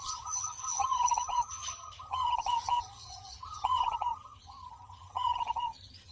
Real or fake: fake